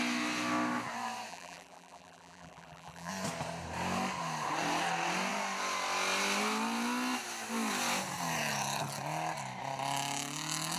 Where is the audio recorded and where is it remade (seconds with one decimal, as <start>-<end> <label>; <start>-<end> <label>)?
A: 0.0-1.3 recorded; 1.3-3.1 remade; 3.1-10.8 recorded

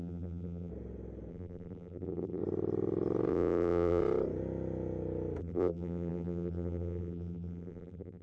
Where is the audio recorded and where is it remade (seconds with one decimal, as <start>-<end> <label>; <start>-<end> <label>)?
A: 0.0-0.7 remade; 0.7-1.3 recorded; 1.3-2.4 remade; 2.4-3.3 recorded; 3.3-4.0 remade; 4.0-5.4 recorded; 5.4-8.2 remade